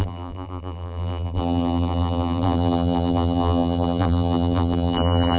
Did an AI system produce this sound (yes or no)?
yes